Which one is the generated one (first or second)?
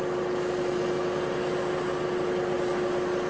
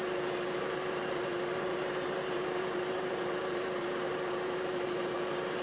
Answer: second